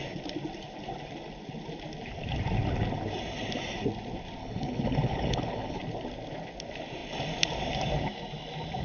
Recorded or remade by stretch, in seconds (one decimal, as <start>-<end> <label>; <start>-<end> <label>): 0.0-4.4 recorded; 4.4-5.8 remade; 5.8-8.8 recorded